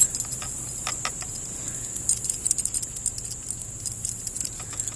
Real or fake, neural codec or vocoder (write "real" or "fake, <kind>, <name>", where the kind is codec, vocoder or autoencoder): real